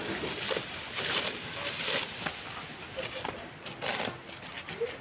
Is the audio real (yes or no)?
yes